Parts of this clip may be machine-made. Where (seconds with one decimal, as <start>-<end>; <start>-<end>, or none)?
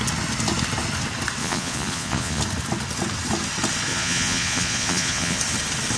1.4-2.4; 3.9-5.4